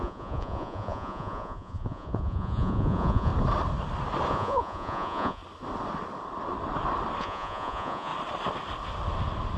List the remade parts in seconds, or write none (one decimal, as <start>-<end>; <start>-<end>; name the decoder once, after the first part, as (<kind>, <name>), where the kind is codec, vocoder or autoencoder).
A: 0.0-3.3 (vocoder, Vocos); 4.3-5.4; 7.2-8.1